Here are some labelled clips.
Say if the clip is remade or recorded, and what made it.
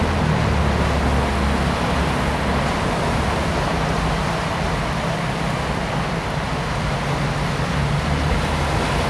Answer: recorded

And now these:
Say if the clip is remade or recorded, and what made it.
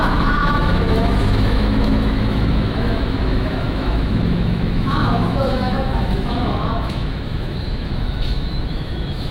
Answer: remade, autoencoder, DAC-VAE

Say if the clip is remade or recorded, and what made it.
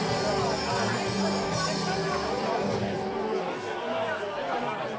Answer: recorded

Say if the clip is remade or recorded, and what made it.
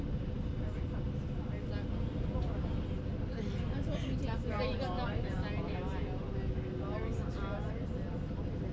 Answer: recorded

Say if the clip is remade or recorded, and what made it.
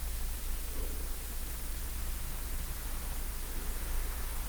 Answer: recorded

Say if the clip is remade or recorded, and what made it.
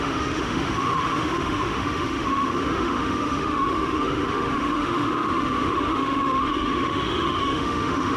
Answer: remade, autoencoder, DAC-VAE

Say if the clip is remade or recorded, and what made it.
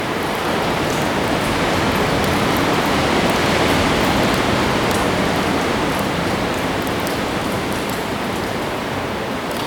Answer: recorded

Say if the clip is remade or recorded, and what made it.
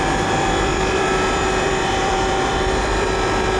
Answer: remade, vocoder, BigVGAN v2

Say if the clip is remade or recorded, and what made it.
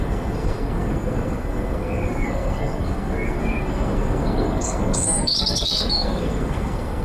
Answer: remade, codec, SNAC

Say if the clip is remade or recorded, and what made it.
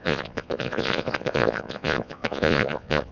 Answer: remade, vocoder, Vocos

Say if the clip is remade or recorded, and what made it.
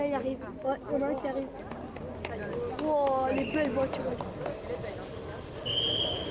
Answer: recorded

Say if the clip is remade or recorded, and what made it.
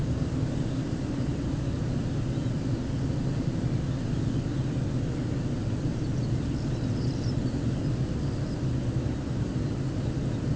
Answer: recorded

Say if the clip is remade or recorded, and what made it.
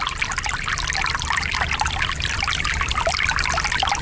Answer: recorded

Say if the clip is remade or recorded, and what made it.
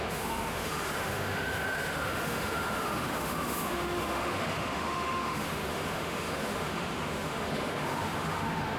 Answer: remade, autoencoder, DAC-VAE